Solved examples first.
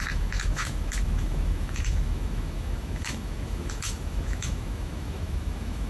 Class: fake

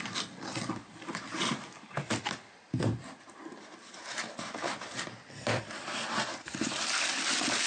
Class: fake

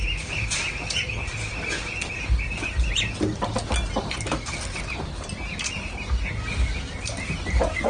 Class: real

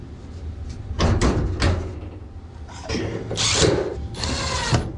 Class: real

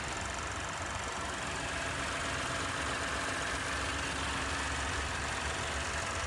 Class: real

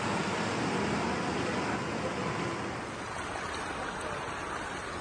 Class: real